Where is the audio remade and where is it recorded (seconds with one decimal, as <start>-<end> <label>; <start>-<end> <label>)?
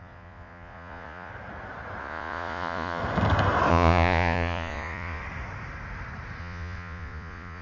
0.0-1.3 remade; 1.3-2.0 recorded; 2.0-3.0 remade; 3.0-3.7 recorded; 3.7-5.2 remade; 5.2-6.4 recorded; 6.4-7.6 remade